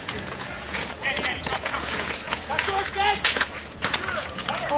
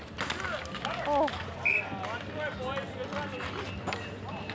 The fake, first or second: first